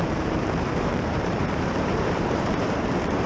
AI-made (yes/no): yes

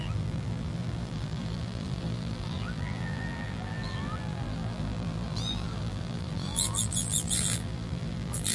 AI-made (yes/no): yes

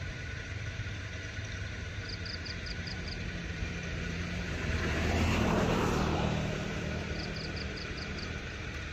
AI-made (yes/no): yes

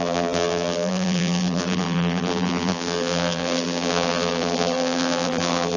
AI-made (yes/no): yes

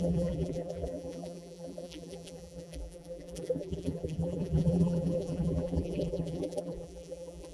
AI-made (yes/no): yes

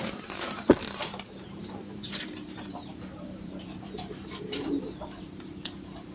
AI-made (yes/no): yes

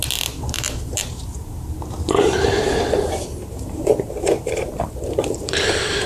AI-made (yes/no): yes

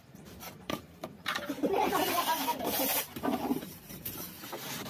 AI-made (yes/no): yes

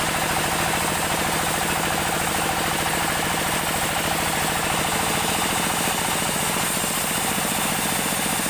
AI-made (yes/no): no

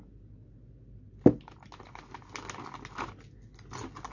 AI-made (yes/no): no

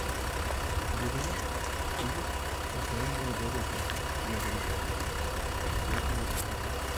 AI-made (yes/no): yes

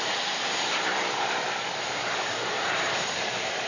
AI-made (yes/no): yes